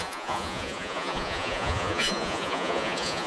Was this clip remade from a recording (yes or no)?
yes